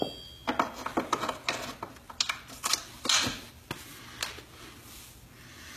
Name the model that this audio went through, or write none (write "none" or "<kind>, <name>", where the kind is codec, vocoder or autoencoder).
none